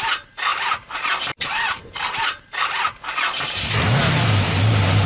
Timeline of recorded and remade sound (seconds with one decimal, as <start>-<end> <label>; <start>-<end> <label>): 0.0-0.5 recorded; 0.5-3.6 remade; 3.6-5.1 recorded